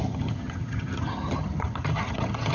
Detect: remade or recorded remade